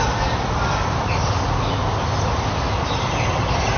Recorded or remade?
recorded